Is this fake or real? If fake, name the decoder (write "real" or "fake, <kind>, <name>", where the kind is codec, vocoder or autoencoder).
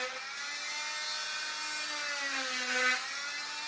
real